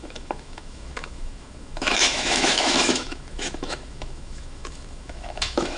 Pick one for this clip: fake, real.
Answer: fake